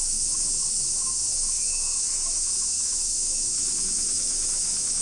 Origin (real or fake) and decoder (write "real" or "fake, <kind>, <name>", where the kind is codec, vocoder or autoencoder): fake, autoencoder, DAC-VAE